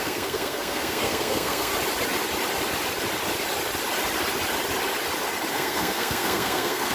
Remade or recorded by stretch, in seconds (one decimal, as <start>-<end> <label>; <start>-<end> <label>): 0.0-1.7 remade; 1.7-5.5 recorded; 5.5-6.9 remade